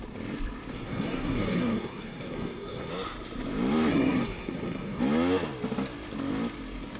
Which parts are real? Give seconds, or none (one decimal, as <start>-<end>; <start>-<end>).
0.0-0.7; 2.9-3.9; 5.0-7.0